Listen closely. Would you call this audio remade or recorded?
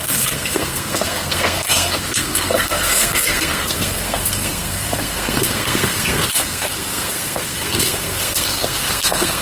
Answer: remade